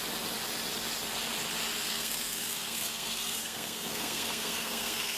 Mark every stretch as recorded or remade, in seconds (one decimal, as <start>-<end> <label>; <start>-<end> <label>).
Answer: 0.0-1.9 recorded; 1.9-5.2 remade